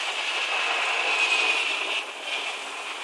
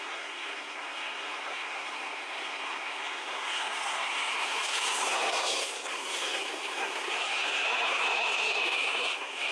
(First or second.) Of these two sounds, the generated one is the second